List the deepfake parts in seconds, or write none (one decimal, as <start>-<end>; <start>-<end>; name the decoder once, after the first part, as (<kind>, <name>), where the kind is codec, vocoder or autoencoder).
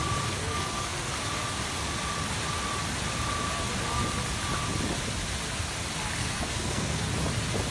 0.4-1.1 (codec, SNAC); 6.2-7.1